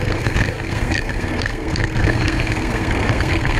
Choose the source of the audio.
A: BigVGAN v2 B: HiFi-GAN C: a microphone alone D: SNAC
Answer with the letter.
D